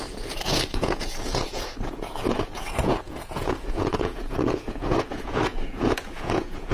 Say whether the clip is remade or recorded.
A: remade